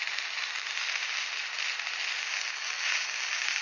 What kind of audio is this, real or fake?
real